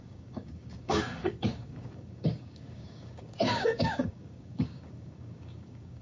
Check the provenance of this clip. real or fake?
fake